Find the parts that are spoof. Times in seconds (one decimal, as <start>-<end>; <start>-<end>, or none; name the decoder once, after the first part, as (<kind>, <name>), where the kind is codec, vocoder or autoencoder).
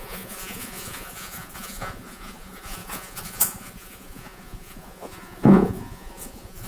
0.0-6.7 (vocoder, Vocos)